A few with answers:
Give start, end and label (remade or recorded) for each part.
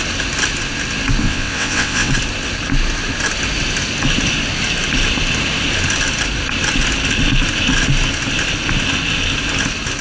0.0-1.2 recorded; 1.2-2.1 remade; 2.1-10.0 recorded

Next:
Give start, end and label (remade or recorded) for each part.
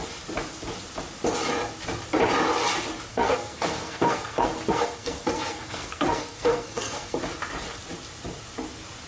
0.0-3.1 recorded; 3.1-7.2 remade; 7.2-9.1 recorded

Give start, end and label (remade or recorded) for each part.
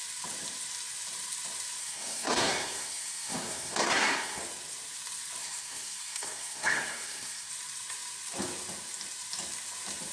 0.0-1.8 recorded; 1.8-4.4 remade; 4.4-5.4 recorded; 5.4-7.5 remade; 7.5-10.1 recorded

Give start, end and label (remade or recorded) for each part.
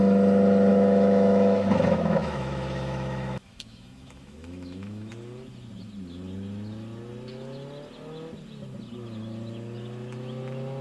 0.0-0.7 recorded; 0.7-5.1 remade; 5.1-10.8 recorded